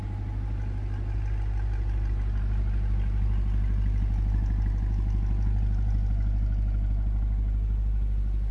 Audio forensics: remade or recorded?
recorded